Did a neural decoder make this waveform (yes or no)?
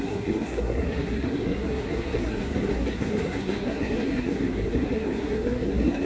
yes